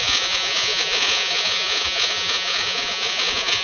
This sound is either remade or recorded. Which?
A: remade